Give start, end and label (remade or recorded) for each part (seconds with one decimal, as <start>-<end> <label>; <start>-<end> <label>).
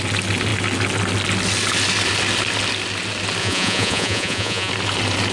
0.0-3.4 recorded; 3.4-4.7 remade; 4.7-5.3 recorded